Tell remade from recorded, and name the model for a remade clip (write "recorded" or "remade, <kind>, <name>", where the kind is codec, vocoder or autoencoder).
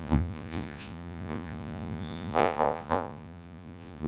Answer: remade, vocoder, Vocos